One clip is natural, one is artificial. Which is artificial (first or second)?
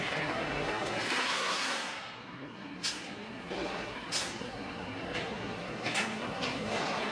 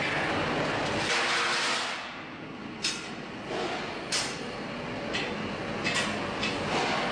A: first